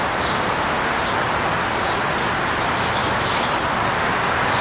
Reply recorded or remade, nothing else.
recorded